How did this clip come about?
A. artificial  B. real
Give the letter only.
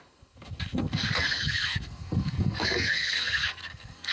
A